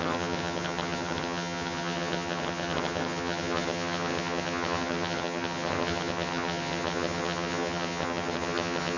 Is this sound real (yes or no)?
no